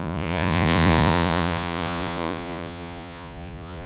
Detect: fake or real fake